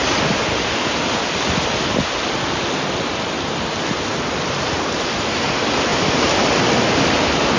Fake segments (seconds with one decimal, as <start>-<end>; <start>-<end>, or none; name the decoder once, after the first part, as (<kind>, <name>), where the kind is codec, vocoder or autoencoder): none